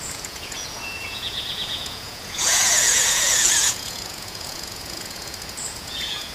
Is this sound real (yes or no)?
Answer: no